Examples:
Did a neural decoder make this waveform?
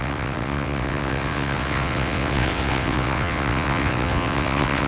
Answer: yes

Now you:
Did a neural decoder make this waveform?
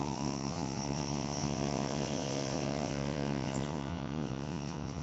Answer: yes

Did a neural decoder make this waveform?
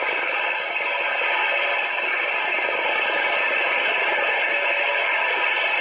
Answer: no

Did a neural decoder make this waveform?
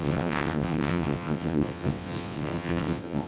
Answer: yes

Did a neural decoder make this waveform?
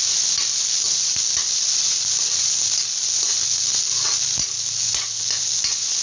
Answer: no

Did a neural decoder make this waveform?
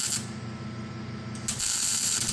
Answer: no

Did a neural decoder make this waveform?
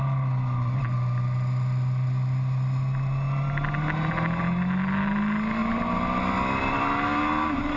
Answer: no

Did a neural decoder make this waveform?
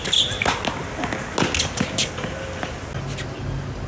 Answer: no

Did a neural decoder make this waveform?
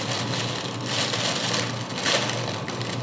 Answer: no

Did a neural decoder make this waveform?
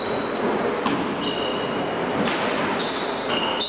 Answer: no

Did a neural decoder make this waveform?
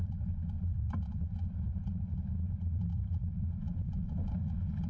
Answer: no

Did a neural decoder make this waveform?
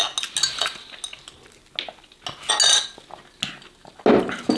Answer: no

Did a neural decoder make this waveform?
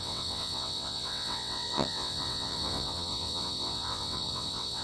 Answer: yes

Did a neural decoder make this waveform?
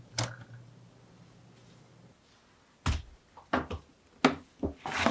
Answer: no